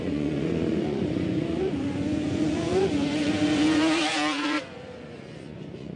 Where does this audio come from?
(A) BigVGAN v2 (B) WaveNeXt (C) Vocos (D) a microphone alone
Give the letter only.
C